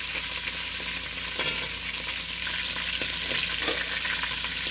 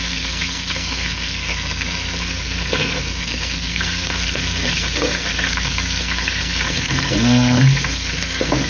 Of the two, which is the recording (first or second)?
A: first